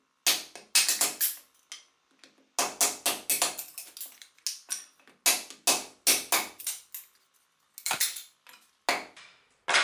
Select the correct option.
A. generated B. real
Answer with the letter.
B